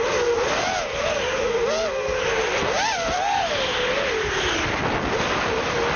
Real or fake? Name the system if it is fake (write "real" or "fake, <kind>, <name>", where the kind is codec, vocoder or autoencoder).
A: real